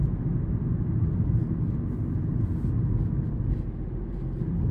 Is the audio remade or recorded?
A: recorded